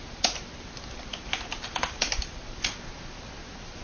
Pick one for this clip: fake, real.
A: real